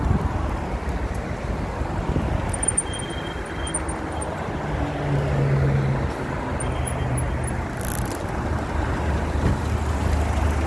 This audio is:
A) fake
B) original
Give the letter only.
B